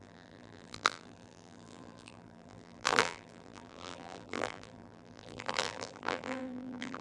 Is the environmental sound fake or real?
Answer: fake